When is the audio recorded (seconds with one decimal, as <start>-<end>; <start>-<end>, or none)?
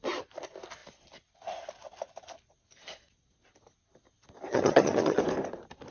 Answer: 0.0-4.5; 5.2-5.9